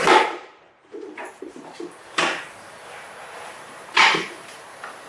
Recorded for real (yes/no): no